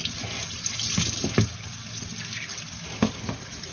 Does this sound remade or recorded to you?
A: recorded